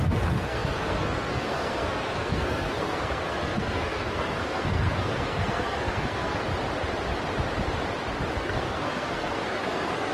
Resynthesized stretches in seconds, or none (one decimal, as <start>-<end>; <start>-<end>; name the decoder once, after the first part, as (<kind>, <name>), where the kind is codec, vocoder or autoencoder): 0.0-6.5 (codec, SNAC); 8.3-10.1